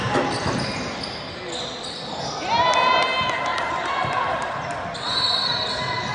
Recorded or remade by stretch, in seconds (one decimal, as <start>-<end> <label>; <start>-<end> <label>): 0.0-3.5 recorded; 3.5-4.1 remade; 4.1-6.1 recorded